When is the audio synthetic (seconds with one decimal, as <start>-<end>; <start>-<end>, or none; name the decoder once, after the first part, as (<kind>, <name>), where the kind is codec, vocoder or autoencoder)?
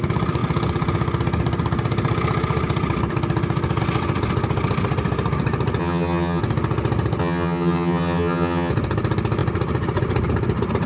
5.8-6.4 (vocoder, HiFi-GAN); 7.2-8.7